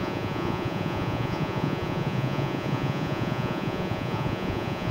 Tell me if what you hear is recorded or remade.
remade